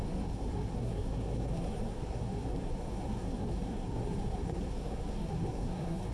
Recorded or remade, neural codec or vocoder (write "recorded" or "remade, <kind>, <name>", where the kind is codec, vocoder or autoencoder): remade, codec, SNAC